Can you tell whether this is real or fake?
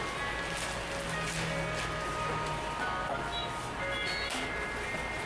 real